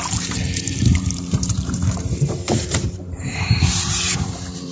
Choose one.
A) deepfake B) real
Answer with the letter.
A